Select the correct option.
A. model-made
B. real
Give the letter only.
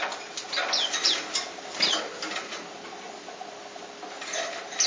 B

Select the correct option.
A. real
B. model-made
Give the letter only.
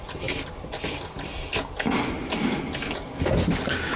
A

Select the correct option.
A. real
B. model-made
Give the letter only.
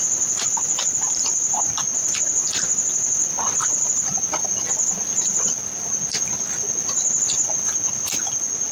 A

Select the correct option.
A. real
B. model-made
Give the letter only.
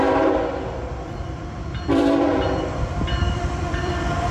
B